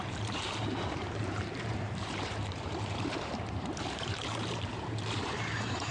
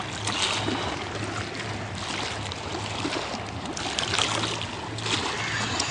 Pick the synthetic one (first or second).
first